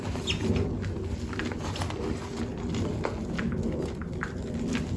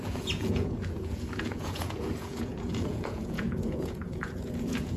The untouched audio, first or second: first